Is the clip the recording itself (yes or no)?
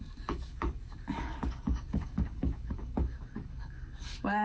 no